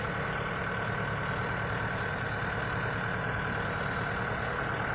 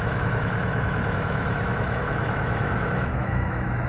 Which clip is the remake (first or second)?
second